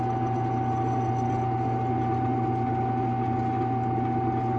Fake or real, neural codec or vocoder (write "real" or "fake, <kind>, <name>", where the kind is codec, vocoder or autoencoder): real